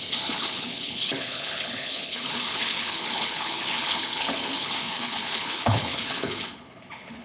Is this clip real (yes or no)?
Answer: no